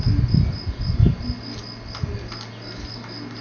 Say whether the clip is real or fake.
real